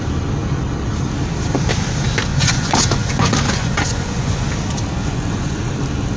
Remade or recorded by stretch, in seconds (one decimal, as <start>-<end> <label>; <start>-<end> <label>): 0.0-2.3 recorded; 2.3-4.5 remade; 4.5-5.0 recorded; 5.0-5.7 remade; 5.7-6.2 recorded